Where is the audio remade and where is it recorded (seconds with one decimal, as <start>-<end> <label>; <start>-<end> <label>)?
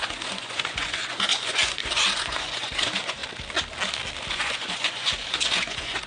0.0-3.2 remade; 3.2-4.3 recorded; 4.3-6.1 remade